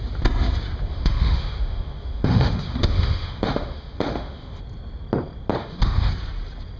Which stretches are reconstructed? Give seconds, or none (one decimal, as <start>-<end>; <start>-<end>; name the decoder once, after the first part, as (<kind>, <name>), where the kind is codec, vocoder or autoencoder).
0.9-4.6 (autoencoder, DAC-VAE); 5.6-6.1